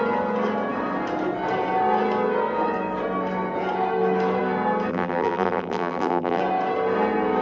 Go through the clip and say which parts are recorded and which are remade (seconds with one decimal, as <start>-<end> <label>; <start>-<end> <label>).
0.0-4.9 recorded; 4.9-6.4 remade; 6.4-7.4 recorded